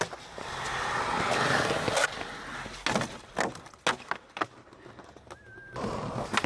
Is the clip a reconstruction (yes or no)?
no